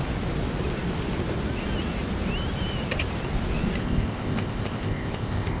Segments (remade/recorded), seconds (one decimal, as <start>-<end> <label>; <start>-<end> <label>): 0.0-3.8 recorded; 3.8-5.6 remade